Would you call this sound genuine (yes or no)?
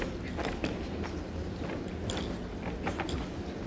yes